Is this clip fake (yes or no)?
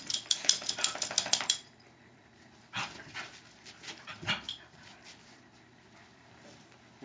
yes